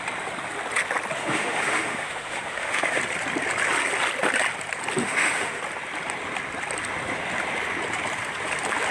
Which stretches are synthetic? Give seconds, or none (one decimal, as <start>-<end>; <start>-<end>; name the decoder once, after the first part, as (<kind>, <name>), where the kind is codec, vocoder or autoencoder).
1.2-3.0 (autoencoder, DAC-VAE); 5.0-5.6